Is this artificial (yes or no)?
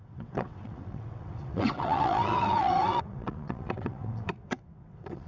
yes